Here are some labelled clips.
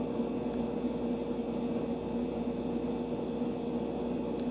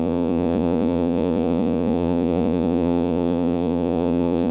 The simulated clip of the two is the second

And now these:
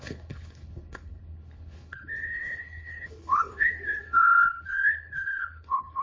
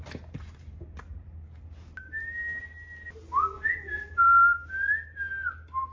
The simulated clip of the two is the first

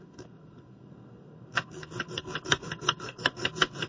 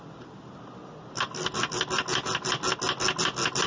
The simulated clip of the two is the first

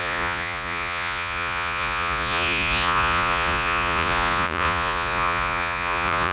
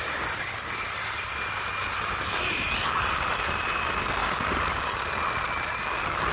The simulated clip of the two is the first